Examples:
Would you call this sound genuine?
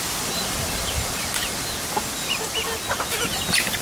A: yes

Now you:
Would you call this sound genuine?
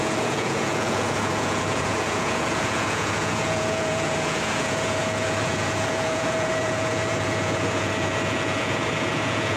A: no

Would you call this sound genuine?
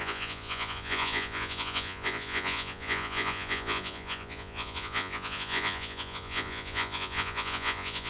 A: no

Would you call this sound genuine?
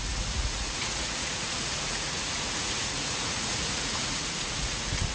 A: no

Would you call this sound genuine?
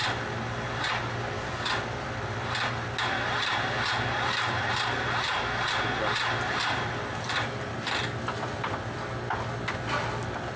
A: yes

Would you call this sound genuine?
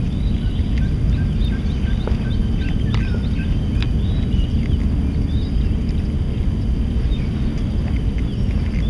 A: yes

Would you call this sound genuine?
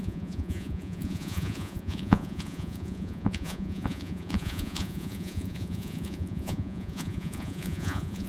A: no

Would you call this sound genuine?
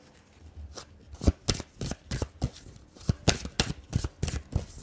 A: yes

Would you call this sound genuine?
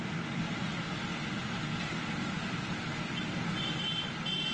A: yes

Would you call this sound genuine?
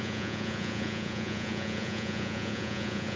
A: no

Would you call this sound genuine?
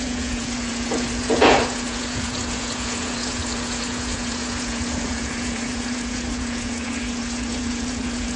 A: no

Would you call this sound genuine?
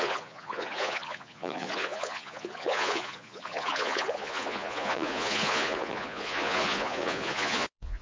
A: no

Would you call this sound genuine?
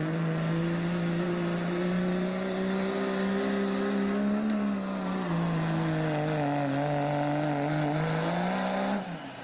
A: yes